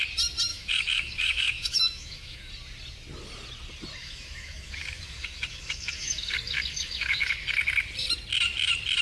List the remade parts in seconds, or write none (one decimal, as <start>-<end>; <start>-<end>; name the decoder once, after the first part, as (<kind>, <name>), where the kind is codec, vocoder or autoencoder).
0.5-2.5 (autoencoder, DAC-VAE); 4.0-7.3